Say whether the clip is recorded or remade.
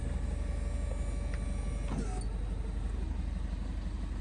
recorded